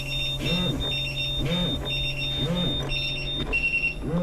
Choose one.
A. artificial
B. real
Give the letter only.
B